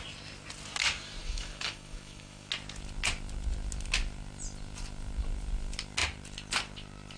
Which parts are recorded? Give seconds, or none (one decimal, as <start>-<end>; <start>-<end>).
0.0-1.2; 2.5-7.2